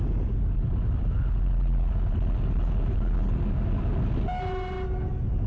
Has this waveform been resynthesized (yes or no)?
no